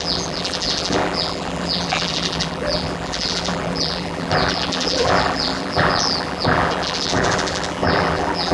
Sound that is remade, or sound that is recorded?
remade